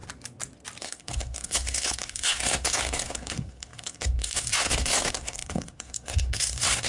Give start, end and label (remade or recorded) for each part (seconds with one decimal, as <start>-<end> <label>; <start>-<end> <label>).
0.0-0.8 recorded; 0.8-6.9 remade